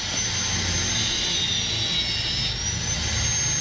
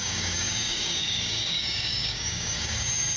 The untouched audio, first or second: first